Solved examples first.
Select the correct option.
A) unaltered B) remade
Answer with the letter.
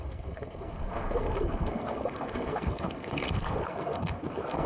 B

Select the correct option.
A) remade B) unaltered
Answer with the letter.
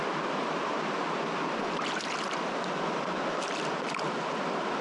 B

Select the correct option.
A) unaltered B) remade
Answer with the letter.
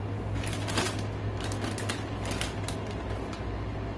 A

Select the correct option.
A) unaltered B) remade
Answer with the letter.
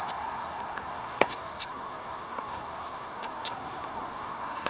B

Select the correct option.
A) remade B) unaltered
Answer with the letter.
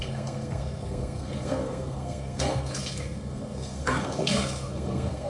A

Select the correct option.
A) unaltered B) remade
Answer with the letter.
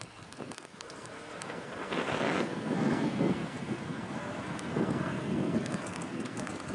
B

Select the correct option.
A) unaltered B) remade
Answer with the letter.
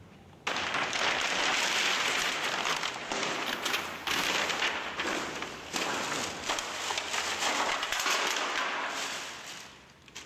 A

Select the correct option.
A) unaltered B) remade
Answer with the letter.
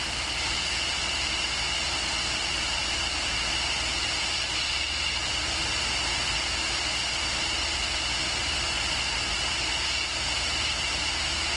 A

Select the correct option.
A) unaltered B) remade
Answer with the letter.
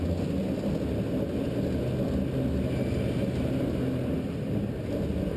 A